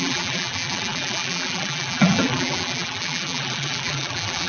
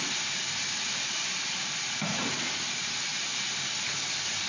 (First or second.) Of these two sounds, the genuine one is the second